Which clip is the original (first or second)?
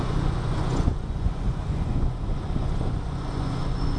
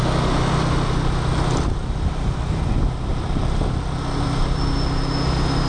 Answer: second